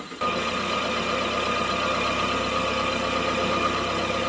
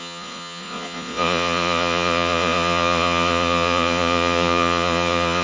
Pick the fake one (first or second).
second